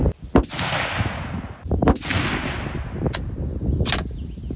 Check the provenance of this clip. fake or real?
real